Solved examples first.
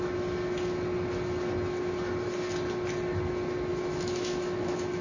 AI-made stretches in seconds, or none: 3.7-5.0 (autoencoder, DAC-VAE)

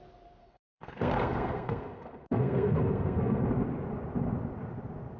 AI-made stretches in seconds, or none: 0.4-3.5 (codec, SNAC)

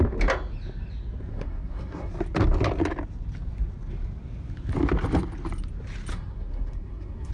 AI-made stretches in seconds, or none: 1.3-2.1 (codec, SNAC); 6.1-7.3

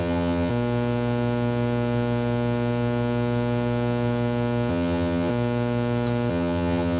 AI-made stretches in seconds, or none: 0.0-0.5 (vocoder, HiFi-GAN); 4.7-5.3; 6.3-7.0

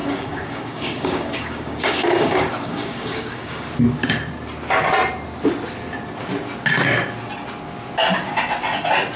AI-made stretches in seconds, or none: 0.0-3.7 (codec, DAC)

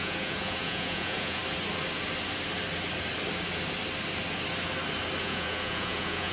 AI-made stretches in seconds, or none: 0.0-1.4 (vocoder, Vocos); 5.2-6.3

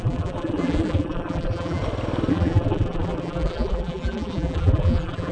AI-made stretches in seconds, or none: 0.0-1.8 (vocoder, BigVGAN v2); 2.3-5.3